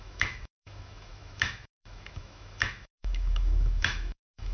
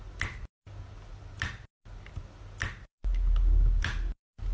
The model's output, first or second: first